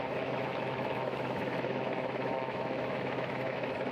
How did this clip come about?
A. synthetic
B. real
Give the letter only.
A